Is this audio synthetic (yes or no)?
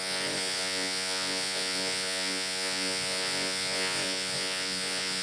yes